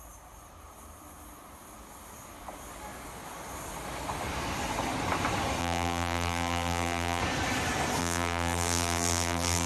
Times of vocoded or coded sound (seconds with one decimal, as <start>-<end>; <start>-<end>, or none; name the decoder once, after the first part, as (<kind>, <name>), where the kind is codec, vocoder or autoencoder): 5.6-7.2 (vocoder, BigVGAN v2); 8.0-9.7

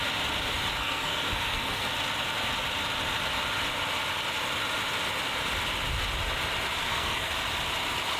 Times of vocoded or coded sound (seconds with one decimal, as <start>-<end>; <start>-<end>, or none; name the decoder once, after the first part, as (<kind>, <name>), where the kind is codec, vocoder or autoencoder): 0.8-1.9 (codec, SNAC); 6.8-7.3

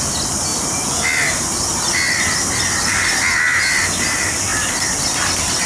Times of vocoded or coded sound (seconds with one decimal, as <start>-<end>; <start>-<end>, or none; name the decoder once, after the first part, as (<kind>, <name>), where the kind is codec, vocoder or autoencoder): none

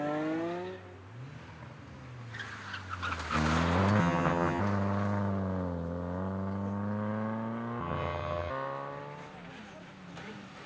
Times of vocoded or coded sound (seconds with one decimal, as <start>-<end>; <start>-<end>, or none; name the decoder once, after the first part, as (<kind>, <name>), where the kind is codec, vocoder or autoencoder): 4.0-4.6 (vocoder, HiFi-GAN); 7.8-8.5

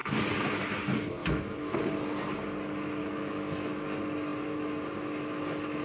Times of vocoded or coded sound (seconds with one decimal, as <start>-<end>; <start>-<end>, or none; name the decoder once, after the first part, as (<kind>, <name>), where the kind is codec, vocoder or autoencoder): 1.2-1.8 (autoencoder, DAC-VAE); 3.0-3.7

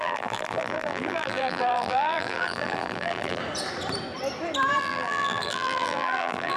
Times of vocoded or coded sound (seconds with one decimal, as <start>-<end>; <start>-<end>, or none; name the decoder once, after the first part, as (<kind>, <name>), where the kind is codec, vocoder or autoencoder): 0.0-3.4 (vocoder, BigVGAN v2); 4.8-6.6

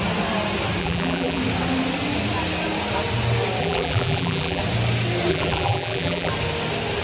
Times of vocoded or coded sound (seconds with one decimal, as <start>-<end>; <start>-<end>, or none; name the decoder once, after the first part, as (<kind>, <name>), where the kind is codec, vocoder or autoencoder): 0.8-1.4 (vocoder, BigVGAN v2); 3.6-4.6; 5.3-6.3

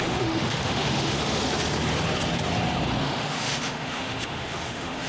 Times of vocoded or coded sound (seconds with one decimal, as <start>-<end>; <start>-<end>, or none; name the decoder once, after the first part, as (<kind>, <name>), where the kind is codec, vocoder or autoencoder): 0.0-1.2 (autoencoder, DAC-VAE); 3.0-5.1